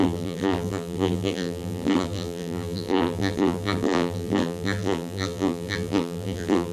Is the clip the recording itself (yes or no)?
no